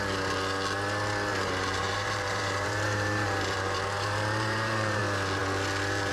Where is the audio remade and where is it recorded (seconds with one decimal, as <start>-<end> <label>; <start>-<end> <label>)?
0.0-1.3 recorded; 1.3-5.0 remade; 5.0-6.1 recorded